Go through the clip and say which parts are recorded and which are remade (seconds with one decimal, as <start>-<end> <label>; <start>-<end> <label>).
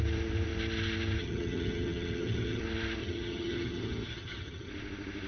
0.0-1.2 recorded; 1.2-2.6 remade; 2.6-3.0 recorded; 3.0-4.7 remade; 4.7-5.3 recorded